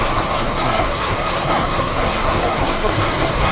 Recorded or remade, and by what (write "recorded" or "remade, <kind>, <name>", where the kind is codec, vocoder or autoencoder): remade, codec, SNAC